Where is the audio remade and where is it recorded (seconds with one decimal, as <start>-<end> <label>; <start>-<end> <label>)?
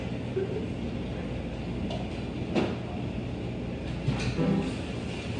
0.0-5.4 recorded